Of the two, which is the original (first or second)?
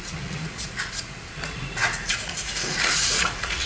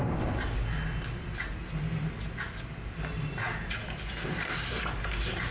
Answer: second